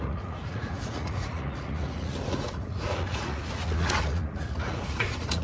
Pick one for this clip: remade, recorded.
remade